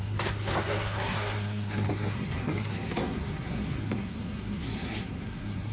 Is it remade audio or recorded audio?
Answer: remade